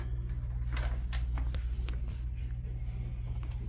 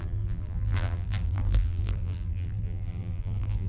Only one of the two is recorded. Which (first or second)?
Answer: first